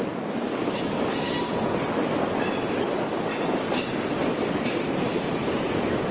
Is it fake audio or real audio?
real